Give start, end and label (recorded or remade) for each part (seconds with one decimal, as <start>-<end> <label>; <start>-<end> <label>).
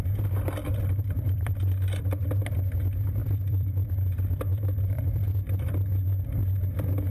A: 0.0-0.6 recorded; 0.6-2.4 remade; 2.4-3.2 recorded; 3.2-3.9 remade; 3.9-4.5 recorded; 4.5-5.9 remade; 5.9-7.1 recorded